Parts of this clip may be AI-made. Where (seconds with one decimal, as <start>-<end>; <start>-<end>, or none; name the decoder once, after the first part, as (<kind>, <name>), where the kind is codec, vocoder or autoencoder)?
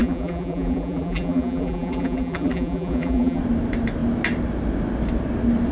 0.0-3.4 (vocoder, BigVGAN v2)